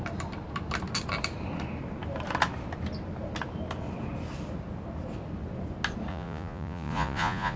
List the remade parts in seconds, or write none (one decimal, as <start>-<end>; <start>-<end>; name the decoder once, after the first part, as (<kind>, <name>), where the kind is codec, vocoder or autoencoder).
6.1-7.6 (vocoder, Vocos)